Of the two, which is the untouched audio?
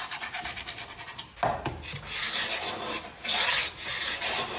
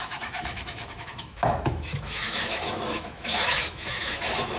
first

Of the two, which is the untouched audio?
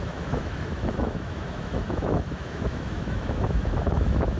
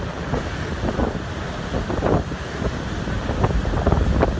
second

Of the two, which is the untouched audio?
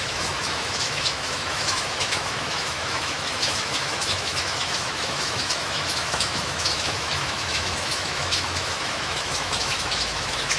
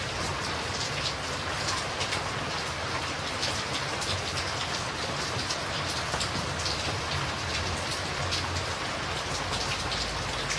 second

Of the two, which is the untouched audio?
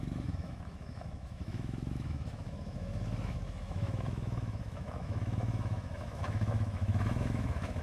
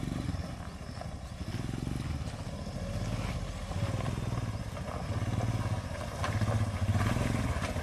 second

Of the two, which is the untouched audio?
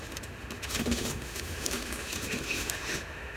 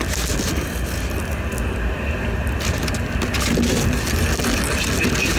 second